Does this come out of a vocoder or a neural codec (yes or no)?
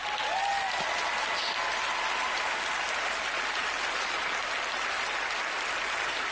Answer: no